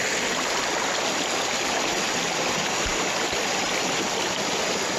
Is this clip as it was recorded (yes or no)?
yes